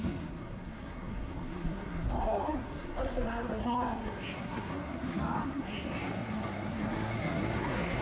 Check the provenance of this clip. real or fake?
fake